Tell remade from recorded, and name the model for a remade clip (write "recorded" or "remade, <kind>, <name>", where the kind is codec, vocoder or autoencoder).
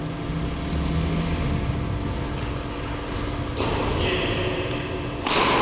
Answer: recorded